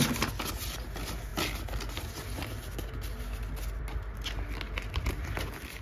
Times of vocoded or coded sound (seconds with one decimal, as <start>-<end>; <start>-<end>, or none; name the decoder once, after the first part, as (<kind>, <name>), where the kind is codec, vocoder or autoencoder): none

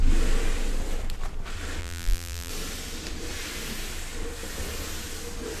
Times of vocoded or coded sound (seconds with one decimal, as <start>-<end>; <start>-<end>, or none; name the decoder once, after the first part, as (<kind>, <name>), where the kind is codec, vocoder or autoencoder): 1.8-2.5 (vocoder, BigVGAN v2)

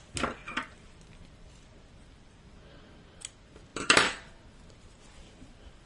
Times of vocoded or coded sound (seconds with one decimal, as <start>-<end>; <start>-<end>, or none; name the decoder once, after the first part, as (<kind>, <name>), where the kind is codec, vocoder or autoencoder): 0.4-2.4 (vocoder, BigVGAN v2); 3.7-4.3

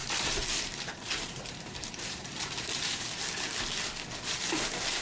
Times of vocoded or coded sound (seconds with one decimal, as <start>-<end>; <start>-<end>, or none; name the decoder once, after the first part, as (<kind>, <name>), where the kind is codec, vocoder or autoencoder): 0.0-3.0 (vocoder, BigVGAN v2)

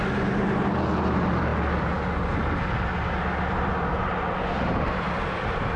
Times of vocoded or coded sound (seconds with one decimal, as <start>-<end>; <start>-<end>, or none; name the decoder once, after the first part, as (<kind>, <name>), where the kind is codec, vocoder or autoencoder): none

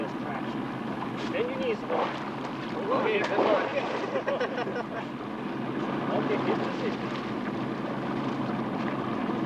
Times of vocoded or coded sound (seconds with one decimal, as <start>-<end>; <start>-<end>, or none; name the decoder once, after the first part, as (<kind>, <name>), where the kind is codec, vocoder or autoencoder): none